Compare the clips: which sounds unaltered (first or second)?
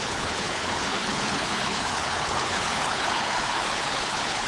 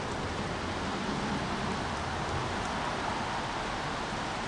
second